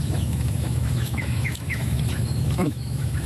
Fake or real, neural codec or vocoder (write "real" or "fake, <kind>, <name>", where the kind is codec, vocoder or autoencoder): fake, autoencoder, DAC-VAE